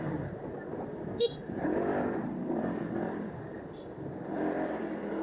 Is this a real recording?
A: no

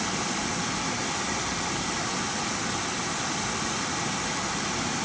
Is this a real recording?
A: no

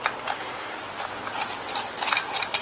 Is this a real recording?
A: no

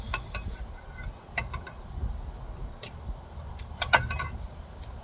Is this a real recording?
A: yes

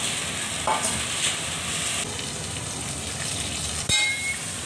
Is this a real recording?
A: yes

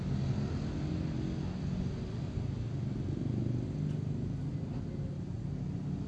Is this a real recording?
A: yes